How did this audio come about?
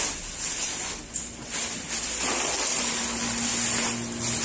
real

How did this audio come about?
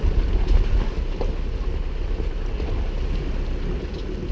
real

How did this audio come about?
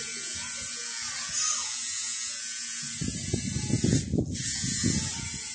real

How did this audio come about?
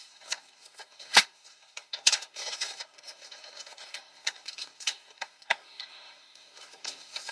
fake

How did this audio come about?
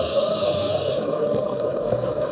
fake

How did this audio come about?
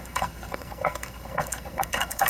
fake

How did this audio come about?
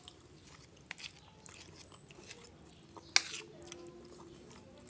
real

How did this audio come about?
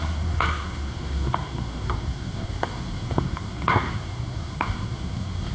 fake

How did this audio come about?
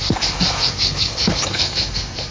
fake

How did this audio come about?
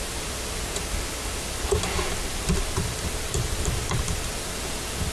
real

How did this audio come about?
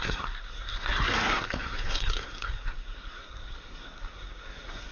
fake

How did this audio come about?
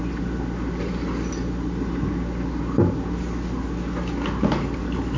real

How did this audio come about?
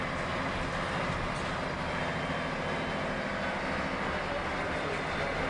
real